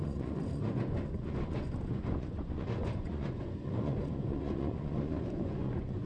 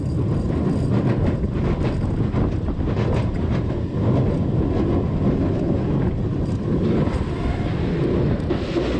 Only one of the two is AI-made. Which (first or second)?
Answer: first